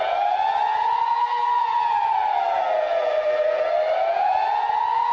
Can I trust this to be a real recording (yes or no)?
yes